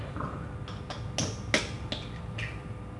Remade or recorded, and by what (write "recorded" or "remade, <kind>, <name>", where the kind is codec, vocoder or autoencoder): recorded